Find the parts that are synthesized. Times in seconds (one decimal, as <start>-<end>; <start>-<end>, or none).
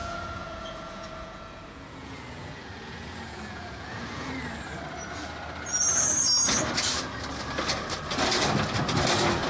0.0-4.3